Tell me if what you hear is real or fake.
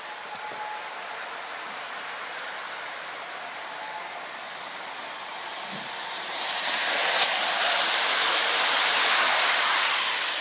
real